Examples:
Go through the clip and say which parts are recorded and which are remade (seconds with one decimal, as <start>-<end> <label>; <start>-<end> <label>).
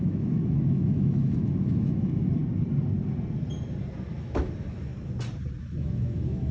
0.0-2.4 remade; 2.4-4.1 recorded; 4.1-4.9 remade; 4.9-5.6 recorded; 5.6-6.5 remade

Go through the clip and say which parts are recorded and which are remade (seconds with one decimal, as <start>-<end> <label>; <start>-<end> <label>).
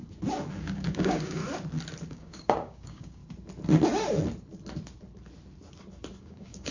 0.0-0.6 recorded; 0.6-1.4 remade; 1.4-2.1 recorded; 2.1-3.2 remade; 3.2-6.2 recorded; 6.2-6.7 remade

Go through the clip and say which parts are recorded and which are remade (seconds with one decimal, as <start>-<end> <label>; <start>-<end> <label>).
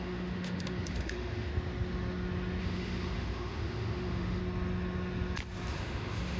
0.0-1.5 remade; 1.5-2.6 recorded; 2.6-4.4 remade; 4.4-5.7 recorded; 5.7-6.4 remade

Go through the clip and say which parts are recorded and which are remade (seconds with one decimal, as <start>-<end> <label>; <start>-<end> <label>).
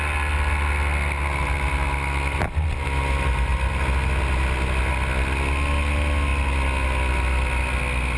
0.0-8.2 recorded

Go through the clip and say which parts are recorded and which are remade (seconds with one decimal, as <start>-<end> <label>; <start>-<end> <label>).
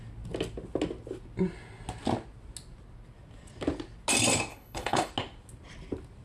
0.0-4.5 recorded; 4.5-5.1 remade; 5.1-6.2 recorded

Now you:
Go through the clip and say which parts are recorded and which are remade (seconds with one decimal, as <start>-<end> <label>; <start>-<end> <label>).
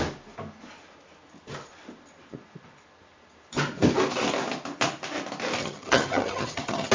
0.0-5.6 recorded; 5.6-6.9 remade